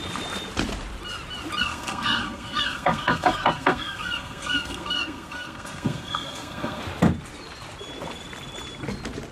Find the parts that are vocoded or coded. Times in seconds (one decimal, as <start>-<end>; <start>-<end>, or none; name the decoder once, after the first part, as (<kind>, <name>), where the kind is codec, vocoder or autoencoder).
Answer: 1.6-6.8 (codec, SNAC)